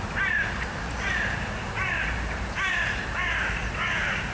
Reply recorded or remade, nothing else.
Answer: recorded